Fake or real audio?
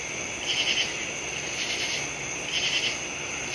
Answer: real